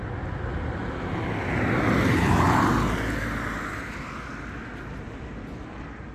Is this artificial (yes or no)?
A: no